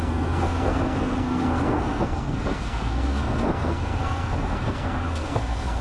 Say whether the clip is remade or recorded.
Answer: remade